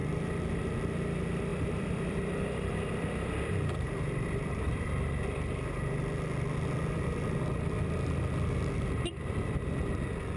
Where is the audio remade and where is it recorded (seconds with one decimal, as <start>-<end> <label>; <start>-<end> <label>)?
0.0-1.5 recorded; 1.5-5.1 remade; 5.1-10.4 recorded